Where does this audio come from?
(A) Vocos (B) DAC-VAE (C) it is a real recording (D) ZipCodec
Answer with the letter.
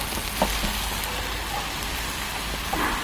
C